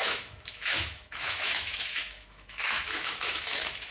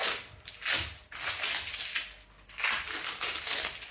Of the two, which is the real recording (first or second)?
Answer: second